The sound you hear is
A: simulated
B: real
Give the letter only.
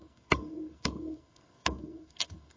A